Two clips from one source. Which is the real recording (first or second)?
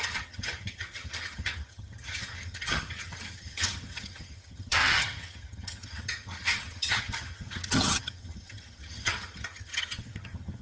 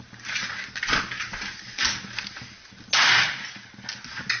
second